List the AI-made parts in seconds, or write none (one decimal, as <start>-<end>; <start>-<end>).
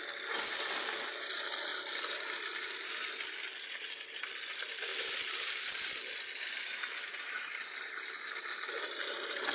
1.7-2.7; 4.9-7.1